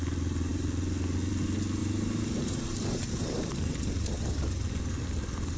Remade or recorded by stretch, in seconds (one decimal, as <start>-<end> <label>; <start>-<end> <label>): 0.0-1.8 recorded; 1.8-4.7 remade; 4.7-5.6 recorded